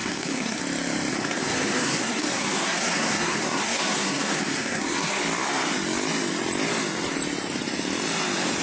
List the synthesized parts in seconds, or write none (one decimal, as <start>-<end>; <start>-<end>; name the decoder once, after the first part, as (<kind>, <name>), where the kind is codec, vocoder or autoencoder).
0.0-0.6 (codec, SNAC); 1.1-5.2